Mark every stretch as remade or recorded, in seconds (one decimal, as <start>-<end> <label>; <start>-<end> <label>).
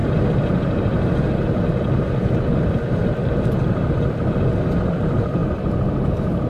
0.0-6.5 recorded